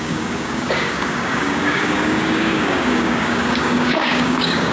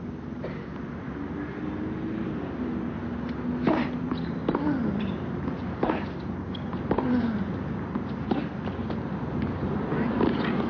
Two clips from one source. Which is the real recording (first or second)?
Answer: second